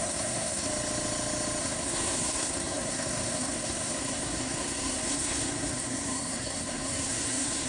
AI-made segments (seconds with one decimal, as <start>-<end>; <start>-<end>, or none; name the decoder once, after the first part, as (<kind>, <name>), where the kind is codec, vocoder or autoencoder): 0.0-0.7 (codec, SNAC); 1.6-7.7